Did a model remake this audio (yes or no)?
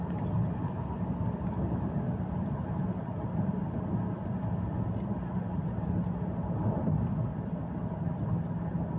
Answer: no